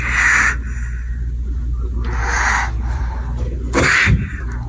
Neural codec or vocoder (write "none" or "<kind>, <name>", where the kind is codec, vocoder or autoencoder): none